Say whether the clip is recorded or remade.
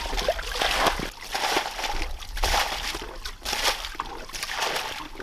recorded